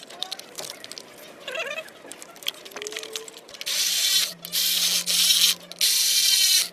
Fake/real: real